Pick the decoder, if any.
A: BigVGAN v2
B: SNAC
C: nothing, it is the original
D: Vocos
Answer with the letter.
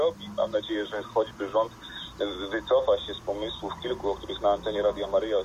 C